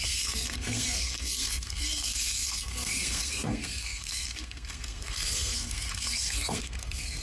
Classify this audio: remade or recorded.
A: remade